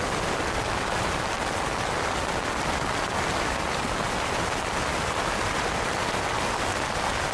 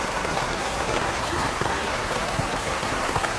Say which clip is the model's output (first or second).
second